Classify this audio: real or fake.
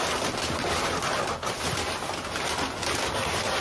real